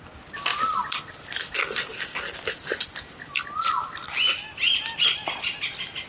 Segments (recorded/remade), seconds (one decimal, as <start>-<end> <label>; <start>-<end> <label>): 0.0-0.5 recorded; 0.5-1.1 remade; 1.1-3.4 recorded; 3.4-4.5 remade; 4.5-6.1 recorded